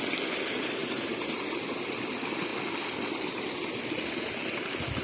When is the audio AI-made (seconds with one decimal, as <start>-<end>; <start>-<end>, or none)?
0.8-1.9